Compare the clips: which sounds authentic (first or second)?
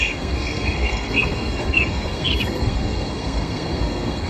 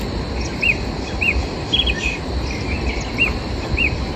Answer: second